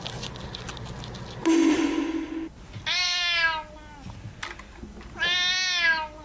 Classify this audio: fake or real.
real